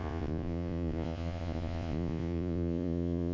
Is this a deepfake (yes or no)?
yes